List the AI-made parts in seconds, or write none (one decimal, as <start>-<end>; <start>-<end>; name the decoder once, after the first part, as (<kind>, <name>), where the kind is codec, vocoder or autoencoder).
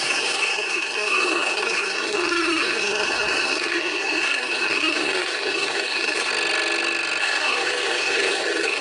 0.0-6.3 (codec, SNAC); 7.2-8.8